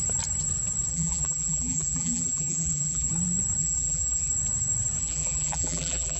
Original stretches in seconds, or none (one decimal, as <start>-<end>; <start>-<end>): 0.0-0.9; 3.1-3.6; 4.3-5.0